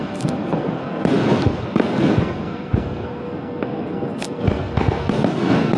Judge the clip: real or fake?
fake